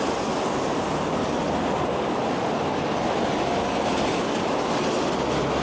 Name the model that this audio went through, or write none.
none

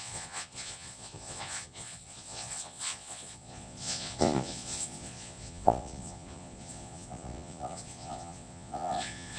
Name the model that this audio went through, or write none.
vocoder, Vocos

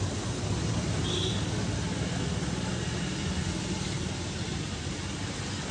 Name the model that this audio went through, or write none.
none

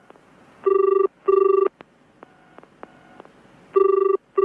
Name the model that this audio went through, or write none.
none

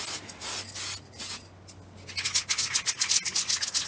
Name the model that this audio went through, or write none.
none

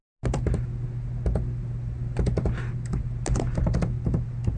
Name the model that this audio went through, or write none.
none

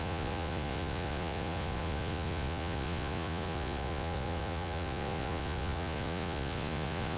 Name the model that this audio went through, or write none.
vocoder, Vocos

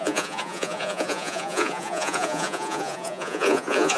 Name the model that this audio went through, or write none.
vocoder, Vocos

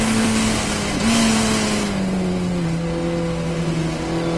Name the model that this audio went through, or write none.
none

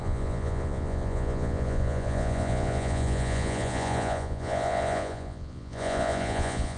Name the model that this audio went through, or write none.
vocoder, Vocos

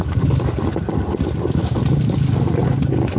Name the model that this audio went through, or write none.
none